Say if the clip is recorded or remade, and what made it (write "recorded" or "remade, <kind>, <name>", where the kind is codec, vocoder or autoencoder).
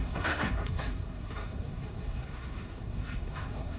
remade, codec, SNAC